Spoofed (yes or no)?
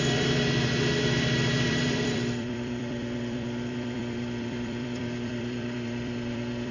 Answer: yes